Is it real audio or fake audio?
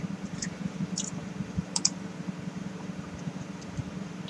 fake